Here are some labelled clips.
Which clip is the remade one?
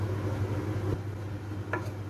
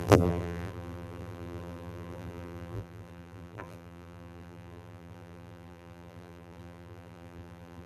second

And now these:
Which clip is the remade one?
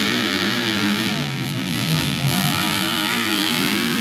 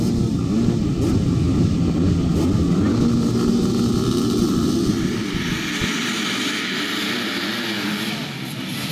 first